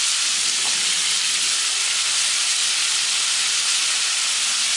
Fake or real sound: real